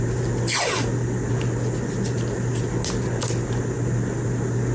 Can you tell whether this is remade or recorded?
recorded